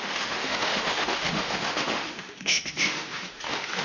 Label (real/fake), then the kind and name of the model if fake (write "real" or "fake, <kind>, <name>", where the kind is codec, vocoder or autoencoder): fake, autoencoder, DAC-VAE